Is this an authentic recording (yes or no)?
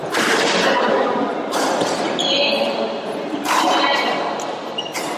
yes